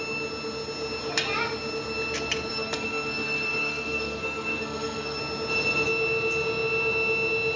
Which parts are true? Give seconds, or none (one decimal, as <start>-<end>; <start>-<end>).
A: 0.0-2.5; 5.2-7.6